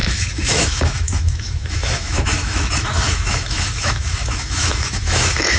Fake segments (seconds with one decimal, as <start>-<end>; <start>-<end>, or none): 0.0-5.6